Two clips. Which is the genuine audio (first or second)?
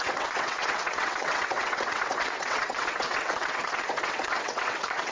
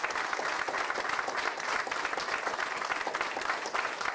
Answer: second